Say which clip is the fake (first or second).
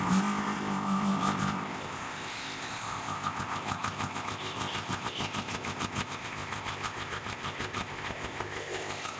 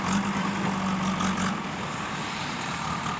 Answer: first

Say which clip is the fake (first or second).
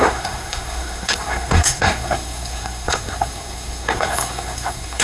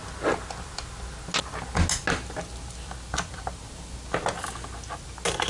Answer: first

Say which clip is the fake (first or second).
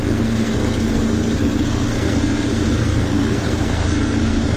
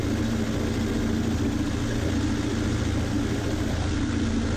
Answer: first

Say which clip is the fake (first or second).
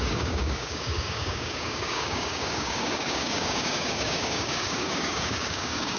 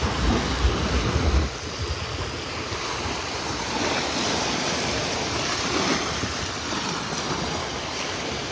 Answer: first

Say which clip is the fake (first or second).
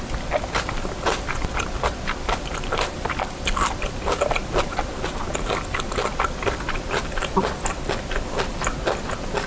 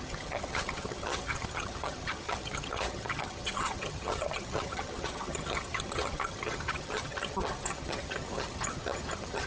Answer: second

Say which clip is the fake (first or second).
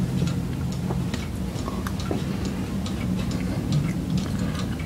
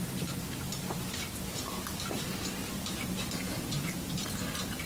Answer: second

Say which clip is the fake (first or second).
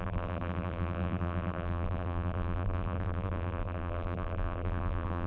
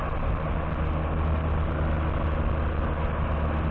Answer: first